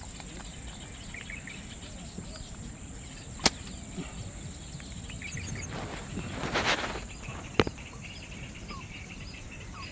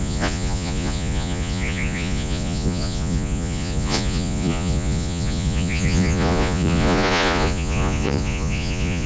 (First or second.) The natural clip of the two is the first